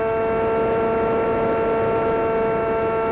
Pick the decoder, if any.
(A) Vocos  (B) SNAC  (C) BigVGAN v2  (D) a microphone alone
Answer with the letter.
D